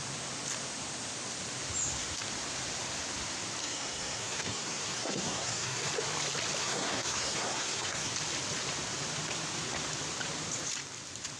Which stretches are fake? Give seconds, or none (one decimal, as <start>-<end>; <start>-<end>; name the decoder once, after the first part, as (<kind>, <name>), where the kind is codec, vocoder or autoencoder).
3.6-5.9 (codec, SNAC); 6.6-8.1